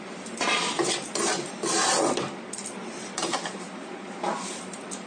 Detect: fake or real fake